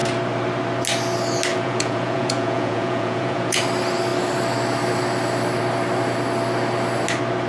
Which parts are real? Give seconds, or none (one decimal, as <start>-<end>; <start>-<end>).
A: 0.0-1.5; 3.6-7.5